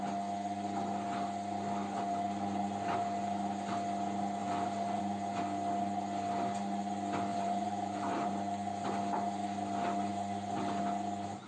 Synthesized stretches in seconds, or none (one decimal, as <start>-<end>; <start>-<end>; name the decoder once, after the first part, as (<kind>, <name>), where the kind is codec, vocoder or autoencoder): 4.4-5.0 (vocoder, BigVGAN v2); 7.3-8.3